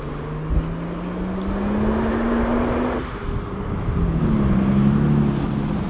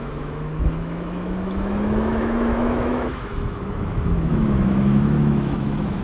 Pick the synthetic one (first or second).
second